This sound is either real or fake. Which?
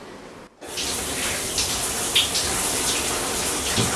real